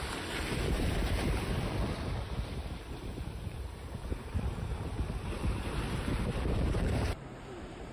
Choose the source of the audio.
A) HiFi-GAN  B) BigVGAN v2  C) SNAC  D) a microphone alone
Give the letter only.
B